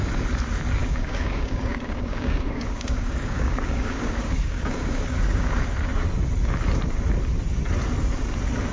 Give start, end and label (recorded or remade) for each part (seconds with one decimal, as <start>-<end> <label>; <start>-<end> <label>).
0.0-0.8 recorded; 0.8-5.5 remade; 5.5-8.7 recorded